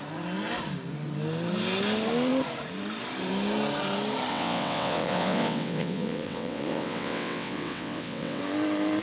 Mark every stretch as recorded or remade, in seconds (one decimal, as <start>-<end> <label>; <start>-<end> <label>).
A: 0.0-4.3 recorded; 4.3-8.4 remade; 8.4-9.0 recorded